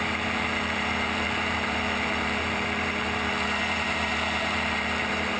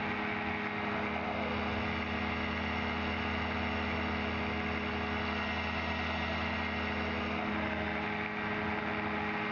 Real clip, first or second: second